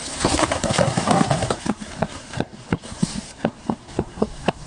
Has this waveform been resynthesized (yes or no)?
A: yes